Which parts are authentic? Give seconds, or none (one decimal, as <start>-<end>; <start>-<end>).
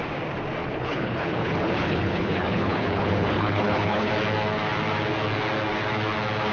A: 0.0-0.6; 4.1-6.5